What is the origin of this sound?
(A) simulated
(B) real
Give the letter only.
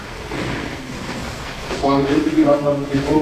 A